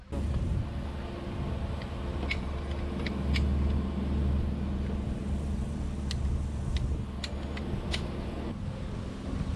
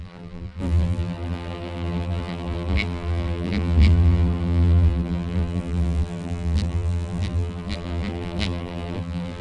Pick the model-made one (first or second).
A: second